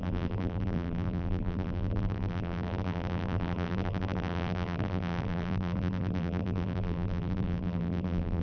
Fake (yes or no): yes